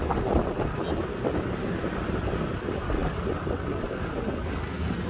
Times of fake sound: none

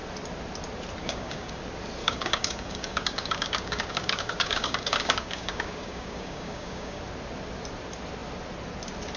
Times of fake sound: 1.0-1.6 (codec, DAC); 2.0-7.0

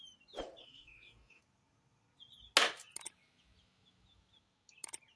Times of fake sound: 0.6-1.4 (codec, DAC)

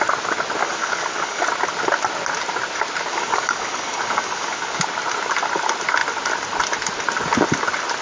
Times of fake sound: 0.6-1.4 (codec, DAC); 3.1-4.8

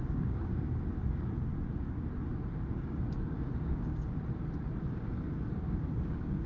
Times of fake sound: 0.0-1.5 (codec, DAC); 2.7-3.9; 4.8-6.5